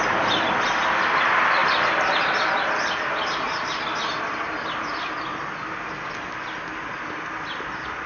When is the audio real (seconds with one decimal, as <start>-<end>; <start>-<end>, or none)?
0.0-8.1